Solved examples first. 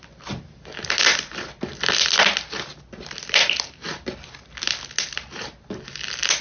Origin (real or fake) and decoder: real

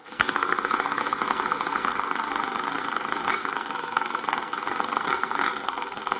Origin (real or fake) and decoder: fake, codec, SNAC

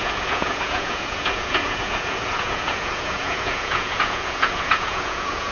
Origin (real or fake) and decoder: fake, vocoder, Vocos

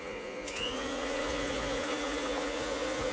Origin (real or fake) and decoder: fake, vocoder, Vocos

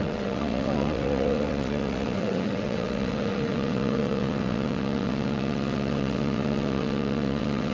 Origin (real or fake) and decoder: fake, vocoder, WaveNeXt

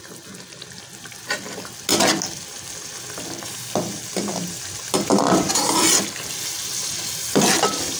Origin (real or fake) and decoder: real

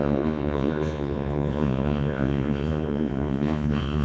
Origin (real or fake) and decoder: fake, vocoder, Vocos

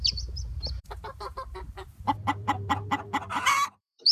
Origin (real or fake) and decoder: fake, vocoder, BigVGAN v2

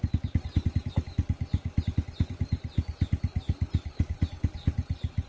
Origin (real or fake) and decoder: real